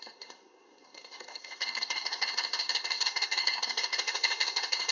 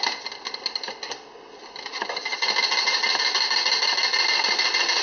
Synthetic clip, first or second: first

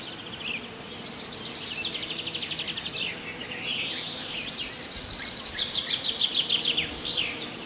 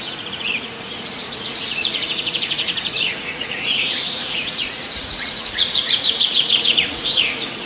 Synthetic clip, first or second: second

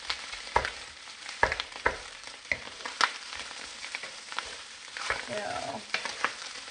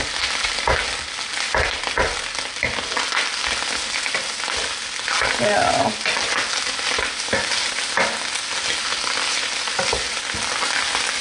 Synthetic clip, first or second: first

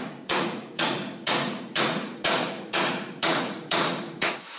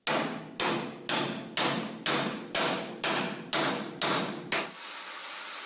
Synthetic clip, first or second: first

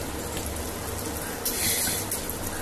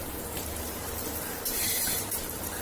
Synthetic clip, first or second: second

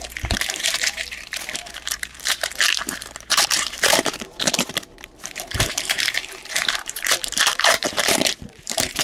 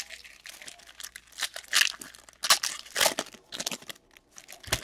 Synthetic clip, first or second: first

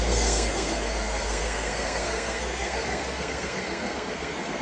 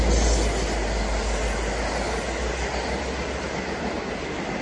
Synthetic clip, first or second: first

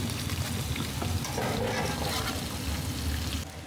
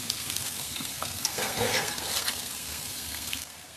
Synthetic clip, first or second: second